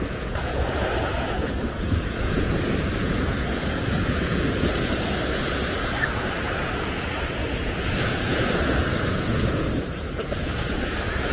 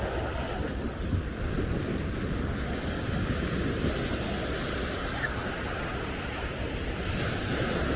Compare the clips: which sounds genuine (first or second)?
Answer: second